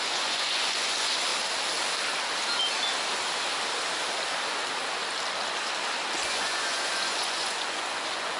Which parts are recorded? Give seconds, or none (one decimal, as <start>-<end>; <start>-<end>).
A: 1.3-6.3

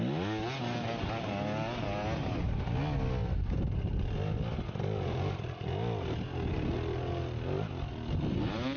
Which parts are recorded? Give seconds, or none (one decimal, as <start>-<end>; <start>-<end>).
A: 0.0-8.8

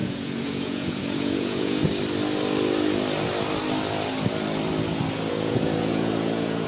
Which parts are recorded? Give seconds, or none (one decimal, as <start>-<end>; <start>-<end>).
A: 1.8-5.3